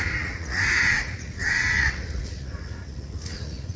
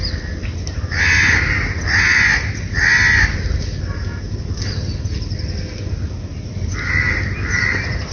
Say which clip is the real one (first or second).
second